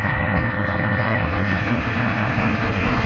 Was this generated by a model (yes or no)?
yes